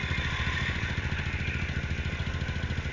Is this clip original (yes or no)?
yes